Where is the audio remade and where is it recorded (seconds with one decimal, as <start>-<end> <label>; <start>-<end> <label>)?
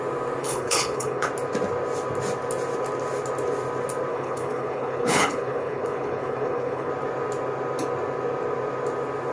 0.0-0.4 recorded; 0.4-1.3 remade; 1.3-4.1 recorded; 4.1-6.9 remade; 6.9-9.3 recorded